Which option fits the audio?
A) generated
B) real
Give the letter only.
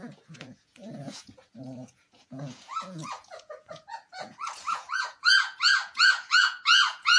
A